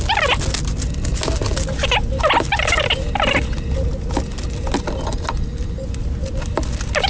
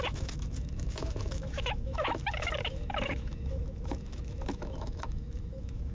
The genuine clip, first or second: first